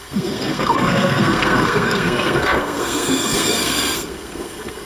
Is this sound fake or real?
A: fake